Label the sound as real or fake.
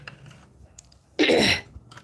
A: real